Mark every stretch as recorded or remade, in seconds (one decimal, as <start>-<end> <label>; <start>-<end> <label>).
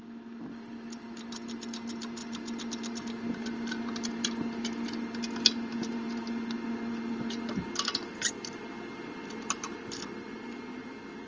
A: 0.0-11.3 recorded